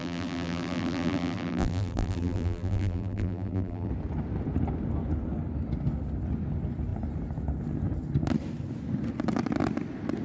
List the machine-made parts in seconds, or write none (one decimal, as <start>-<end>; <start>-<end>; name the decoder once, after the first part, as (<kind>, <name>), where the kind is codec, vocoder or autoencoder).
0.0-3.9 (vocoder, BigVGAN v2)